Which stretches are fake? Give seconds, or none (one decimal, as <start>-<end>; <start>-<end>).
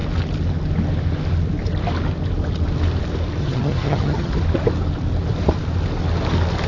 3.4-4.3